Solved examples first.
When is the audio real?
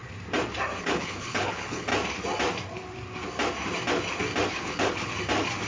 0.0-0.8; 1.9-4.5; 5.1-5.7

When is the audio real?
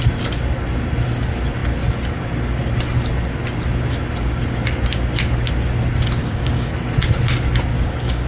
0.0-6.2; 6.7-7.7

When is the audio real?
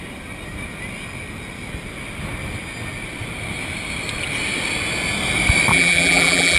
0.0-5.7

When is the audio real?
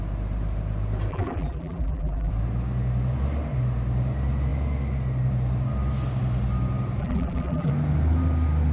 0.0-1.1; 2.3-7.0; 7.7-8.7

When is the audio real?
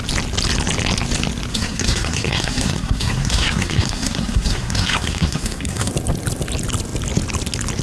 0.0-1.5; 5.9-7.8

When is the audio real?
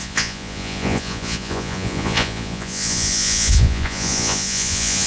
none